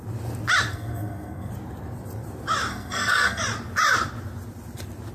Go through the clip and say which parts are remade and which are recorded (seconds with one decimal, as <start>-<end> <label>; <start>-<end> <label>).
0.0-0.7 recorded; 0.7-1.5 remade; 1.5-2.7 recorded; 2.7-3.4 remade; 3.4-5.1 recorded